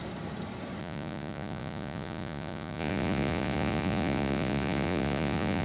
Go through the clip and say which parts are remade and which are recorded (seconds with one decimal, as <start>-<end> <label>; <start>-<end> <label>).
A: 0.0-0.8 recorded; 0.8-5.6 remade